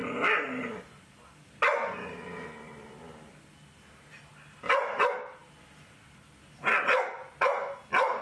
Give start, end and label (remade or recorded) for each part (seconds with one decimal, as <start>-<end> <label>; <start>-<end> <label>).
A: 0.0-8.2 recorded